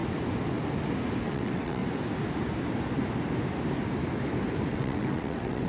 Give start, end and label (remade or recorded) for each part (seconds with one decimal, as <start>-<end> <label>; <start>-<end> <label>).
0.0-1.2 recorded; 1.2-1.8 remade; 1.8-4.7 recorded; 4.7-5.7 remade